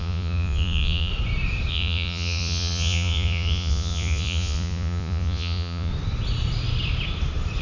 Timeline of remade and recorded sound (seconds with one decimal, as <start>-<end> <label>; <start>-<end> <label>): 0.0-1.1 remade; 1.1-1.7 recorded; 1.7-5.9 remade; 5.9-7.6 recorded